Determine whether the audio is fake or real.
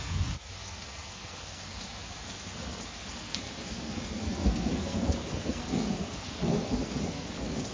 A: fake